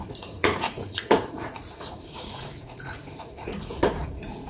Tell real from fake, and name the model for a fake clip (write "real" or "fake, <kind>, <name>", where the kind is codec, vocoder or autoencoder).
fake, vocoder, Vocos